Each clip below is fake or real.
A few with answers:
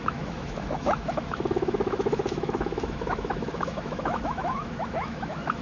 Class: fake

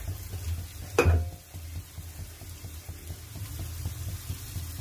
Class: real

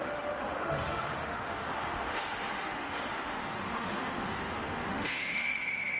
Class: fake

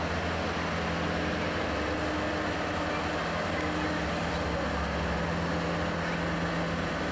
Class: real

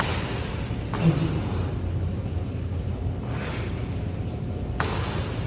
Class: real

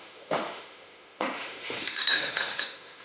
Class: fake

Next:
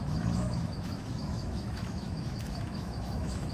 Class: fake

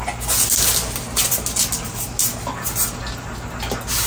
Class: real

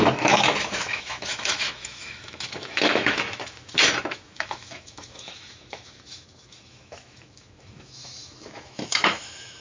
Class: fake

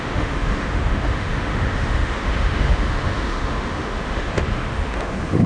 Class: fake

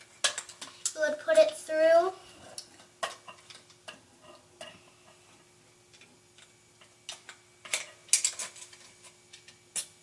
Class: real